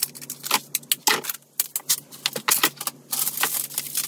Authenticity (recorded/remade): recorded